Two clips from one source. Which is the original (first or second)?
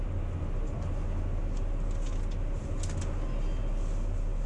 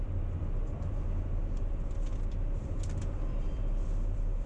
first